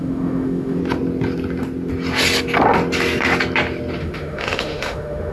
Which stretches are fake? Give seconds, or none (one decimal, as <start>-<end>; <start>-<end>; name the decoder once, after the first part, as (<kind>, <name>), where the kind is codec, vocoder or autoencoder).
0.0-0.8 (autoencoder, DAC-VAE); 4.0-5.3